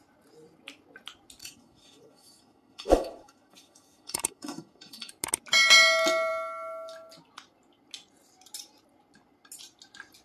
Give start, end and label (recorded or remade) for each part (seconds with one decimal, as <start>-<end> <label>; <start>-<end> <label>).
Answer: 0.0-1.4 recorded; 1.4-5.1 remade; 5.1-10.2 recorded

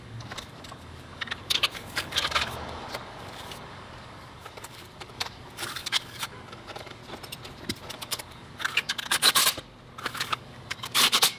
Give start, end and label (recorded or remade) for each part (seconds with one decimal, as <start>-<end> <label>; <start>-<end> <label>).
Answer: 0.0-7.0 remade; 7.0-7.9 recorded; 7.9-9.4 remade; 9.4-10.0 recorded; 10.0-11.4 remade

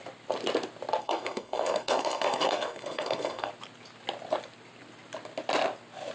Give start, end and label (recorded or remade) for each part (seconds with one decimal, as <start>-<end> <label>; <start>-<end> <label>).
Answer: 0.0-1.0 recorded; 1.0-3.5 remade; 3.5-6.1 recorded

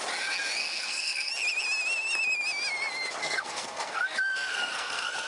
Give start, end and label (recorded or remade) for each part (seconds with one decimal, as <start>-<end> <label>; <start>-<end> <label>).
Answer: 0.0-0.6 recorded; 0.6-1.3 remade; 1.3-3.2 recorded; 3.2-5.3 remade

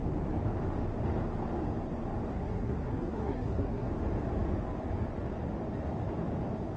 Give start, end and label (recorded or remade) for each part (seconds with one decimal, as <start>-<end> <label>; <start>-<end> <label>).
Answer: 0.0-2.3 recorded; 2.3-3.9 remade; 3.9-6.8 recorded